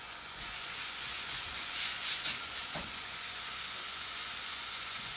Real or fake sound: fake